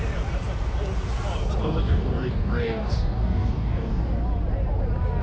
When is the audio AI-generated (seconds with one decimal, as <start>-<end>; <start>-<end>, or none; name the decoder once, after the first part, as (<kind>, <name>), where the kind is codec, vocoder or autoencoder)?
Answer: 1.6-4.0 (codec, DAC)